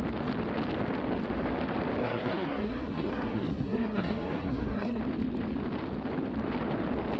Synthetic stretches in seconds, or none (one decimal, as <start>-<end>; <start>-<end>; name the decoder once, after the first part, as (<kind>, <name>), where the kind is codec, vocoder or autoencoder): 2.0-5.0 (codec, SNAC)